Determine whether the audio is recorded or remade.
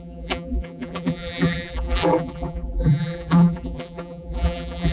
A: remade